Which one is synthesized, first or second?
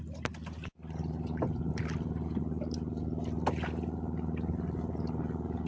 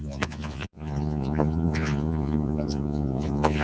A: second